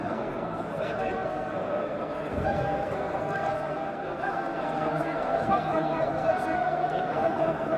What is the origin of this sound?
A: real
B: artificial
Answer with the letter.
B